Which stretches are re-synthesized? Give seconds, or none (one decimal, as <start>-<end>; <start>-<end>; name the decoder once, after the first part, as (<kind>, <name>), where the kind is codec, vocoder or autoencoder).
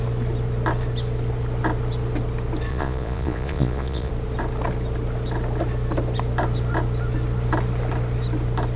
2.7-4.1 (vocoder, Vocos)